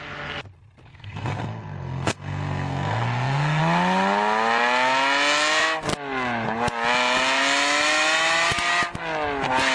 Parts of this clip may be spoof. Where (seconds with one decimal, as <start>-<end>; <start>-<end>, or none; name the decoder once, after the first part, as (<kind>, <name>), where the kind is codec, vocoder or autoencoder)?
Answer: 0.9-3.6 (codec, SNAC)